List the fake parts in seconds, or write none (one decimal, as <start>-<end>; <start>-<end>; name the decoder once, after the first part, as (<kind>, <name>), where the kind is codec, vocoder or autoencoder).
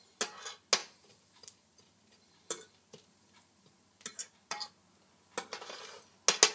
0.8-4.7 (vocoder, BigVGAN v2)